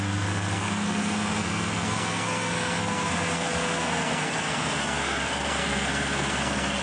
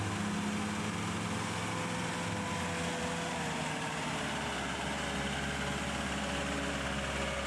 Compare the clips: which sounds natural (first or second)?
second